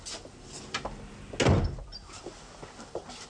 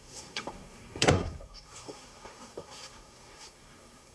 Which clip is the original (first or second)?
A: first